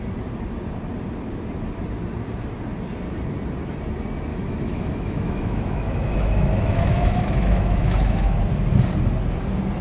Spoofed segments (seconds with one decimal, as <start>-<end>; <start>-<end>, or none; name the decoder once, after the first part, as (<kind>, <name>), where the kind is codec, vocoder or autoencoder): 4.3-8.4 (autoencoder, DAC-VAE)